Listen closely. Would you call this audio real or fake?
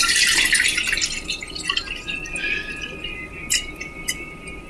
real